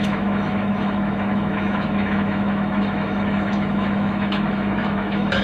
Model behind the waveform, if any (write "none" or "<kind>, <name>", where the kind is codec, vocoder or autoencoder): autoencoder, DAC-VAE